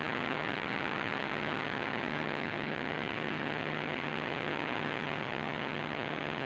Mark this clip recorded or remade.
remade